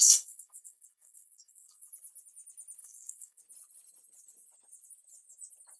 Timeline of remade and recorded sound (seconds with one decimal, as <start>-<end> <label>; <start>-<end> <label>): 0.0-1.9 remade; 1.9-2.8 recorded; 2.8-3.4 remade; 3.4-5.8 recorded